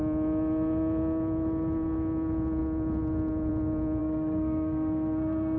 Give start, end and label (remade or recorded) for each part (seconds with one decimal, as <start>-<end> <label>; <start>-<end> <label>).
0.0-4.0 recorded; 4.0-5.6 remade